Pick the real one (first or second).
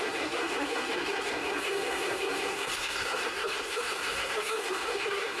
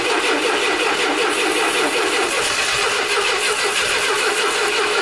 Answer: second